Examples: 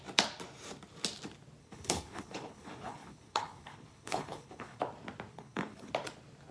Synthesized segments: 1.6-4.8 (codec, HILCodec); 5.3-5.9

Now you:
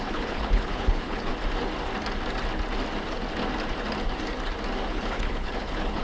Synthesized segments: 0.0-1.3 (codec, HILCodec); 4.9-6.0

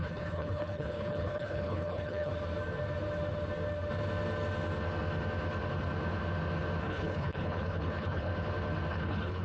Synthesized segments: 0.0-2.3 (codec, HILCodec); 6.8-8.3; 8.9-9.4

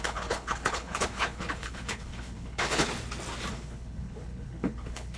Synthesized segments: 0.0-2.9 (codec, HILCodec); 3.5-5.2

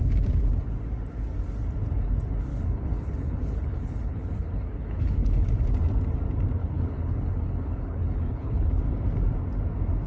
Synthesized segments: 2.5-5.5 (codec, HILCodec); 6.6-8.7